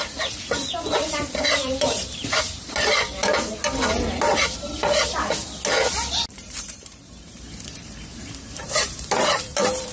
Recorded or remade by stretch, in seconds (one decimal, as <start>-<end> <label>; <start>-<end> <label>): 0.0-3.6 remade; 3.6-4.3 recorded; 4.3-4.8 remade; 4.8-6.3 recorded; 6.3-9.9 remade